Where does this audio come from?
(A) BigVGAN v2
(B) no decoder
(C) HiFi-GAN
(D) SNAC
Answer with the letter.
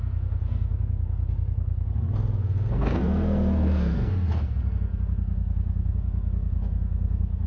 D